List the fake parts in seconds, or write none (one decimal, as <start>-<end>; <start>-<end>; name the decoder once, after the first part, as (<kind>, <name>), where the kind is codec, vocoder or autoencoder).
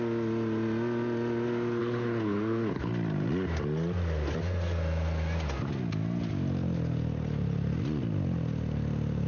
1.8-2.9 (codec, HILCodec)